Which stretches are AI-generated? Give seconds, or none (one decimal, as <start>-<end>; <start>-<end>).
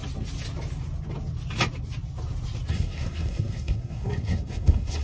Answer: 2.7-5.0